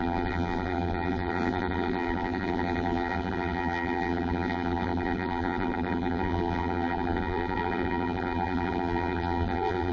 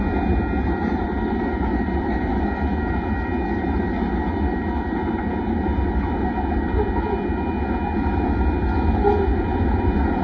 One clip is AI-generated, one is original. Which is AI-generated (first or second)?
first